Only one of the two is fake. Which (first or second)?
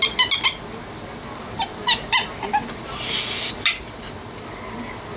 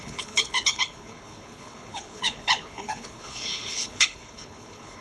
second